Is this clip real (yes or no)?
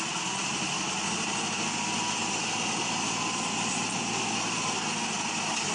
yes